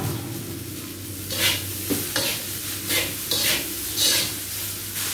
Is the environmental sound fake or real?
real